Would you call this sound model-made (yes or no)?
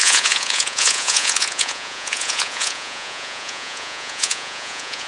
yes